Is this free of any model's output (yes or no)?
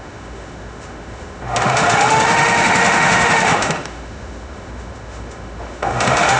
no